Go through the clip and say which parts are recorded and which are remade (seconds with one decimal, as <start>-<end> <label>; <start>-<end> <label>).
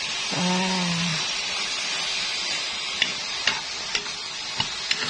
0.0-1.1 recorded; 1.1-1.7 remade; 1.7-5.1 recorded